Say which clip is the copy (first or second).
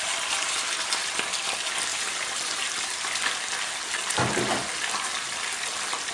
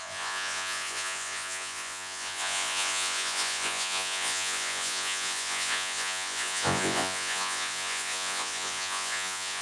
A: second